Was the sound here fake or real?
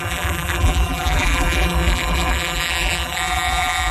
fake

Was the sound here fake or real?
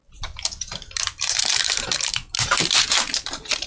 fake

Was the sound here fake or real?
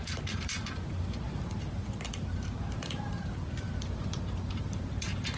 fake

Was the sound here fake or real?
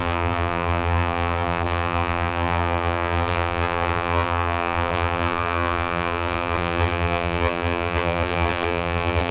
fake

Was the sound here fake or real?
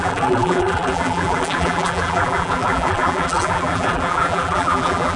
fake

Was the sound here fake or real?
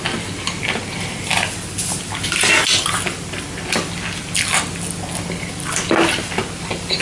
real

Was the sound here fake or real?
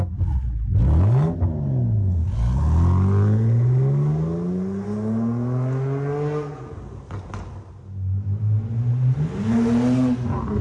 real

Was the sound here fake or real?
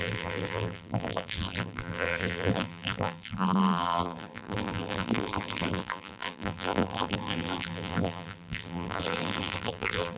fake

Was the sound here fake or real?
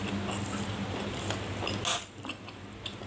real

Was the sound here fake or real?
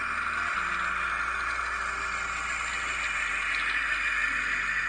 real